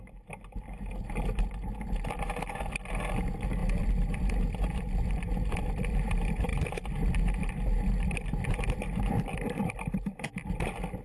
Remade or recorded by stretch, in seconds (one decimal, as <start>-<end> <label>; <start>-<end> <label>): 0.0-3.6 recorded; 3.6-5.1 remade; 5.1-6.5 recorded; 6.5-11.0 remade